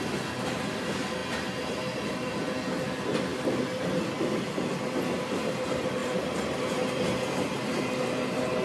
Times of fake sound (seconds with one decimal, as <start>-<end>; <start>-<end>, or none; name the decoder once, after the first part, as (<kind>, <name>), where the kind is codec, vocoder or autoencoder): none